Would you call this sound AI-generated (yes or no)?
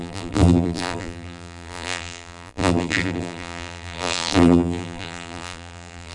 yes